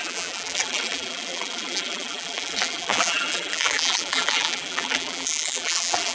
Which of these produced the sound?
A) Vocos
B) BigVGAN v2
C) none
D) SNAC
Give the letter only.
B